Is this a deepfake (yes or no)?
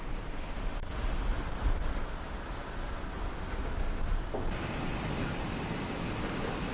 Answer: no